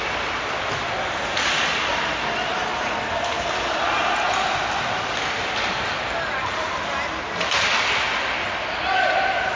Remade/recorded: recorded